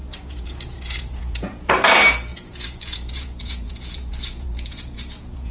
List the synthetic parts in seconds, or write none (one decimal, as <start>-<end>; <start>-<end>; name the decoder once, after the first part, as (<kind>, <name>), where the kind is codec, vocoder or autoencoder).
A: 0.0-1.7 (vocoder, Vocos); 2.3-5.5